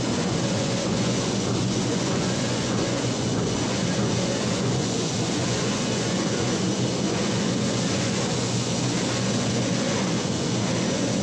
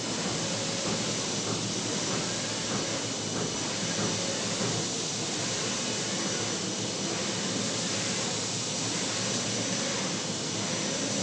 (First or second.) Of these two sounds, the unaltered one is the second